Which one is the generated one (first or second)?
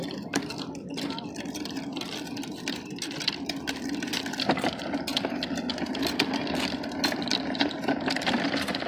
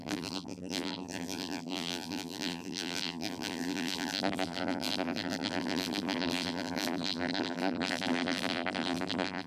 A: second